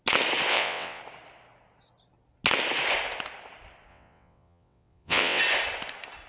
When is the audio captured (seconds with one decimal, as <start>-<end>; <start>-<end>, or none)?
0.0-0.5; 1.0-3.9; 5.4-6.3